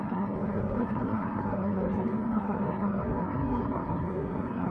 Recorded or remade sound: remade